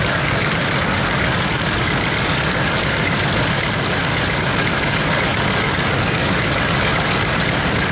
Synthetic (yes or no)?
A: yes